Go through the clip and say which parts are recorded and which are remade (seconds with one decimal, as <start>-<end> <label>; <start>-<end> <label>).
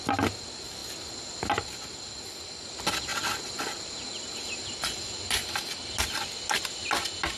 0.0-7.4 recorded